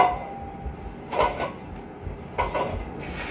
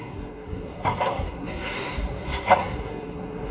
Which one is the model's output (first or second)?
second